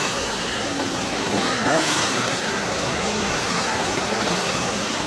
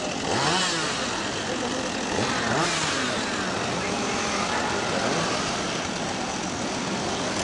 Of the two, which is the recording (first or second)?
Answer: second